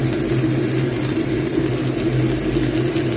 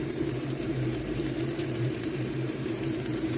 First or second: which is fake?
second